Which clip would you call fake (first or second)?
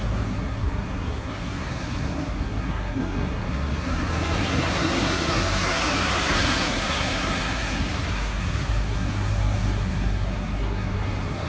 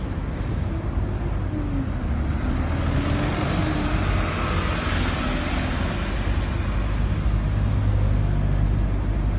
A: first